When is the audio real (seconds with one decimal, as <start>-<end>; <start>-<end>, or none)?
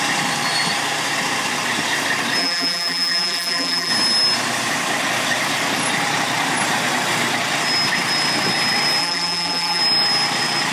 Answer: 0.0-2.4; 3.9-9.0; 9.8-10.7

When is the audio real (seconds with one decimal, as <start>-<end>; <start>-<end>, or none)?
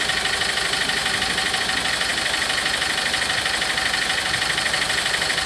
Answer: 0.0-2.1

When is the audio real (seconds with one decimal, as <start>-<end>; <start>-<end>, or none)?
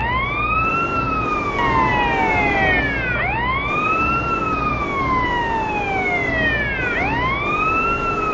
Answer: 0.0-8.3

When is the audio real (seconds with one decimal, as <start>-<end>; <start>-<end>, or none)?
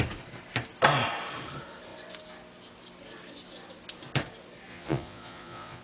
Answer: 0.0-4.7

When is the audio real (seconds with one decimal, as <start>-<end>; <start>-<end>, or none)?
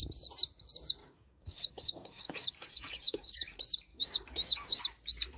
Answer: 0.0-1.0; 3.3-3.9; 4.8-5.4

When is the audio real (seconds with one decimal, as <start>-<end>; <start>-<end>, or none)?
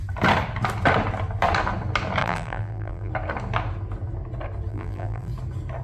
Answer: 0.0-2.2; 3.1-4.7; 5.3-5.8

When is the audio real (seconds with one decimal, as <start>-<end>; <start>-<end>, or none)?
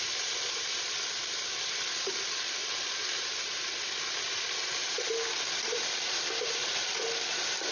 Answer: 0.0-7.7